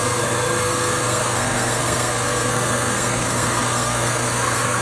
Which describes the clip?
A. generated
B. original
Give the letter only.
A